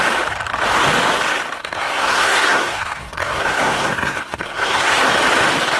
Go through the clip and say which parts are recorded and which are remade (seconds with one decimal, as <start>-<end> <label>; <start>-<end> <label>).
0.0-1.6 recorded; 1.6-5.1 remade; 5.1-5.8 recorded